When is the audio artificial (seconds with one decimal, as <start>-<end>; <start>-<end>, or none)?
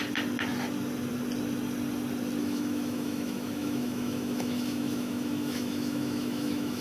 2.4-6.8